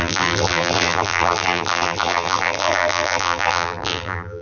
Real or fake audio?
fake